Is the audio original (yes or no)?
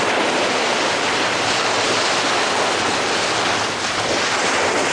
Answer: yes